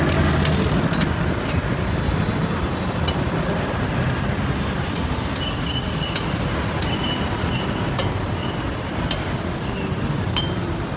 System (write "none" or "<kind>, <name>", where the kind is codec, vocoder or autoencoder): none